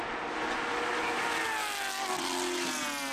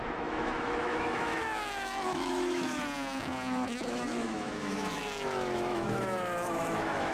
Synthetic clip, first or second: second